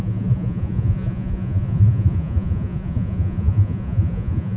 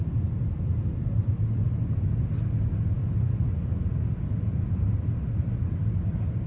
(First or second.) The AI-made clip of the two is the first